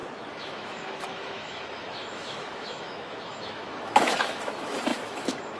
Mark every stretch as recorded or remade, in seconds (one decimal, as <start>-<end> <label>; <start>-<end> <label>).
0.0-5.6 remade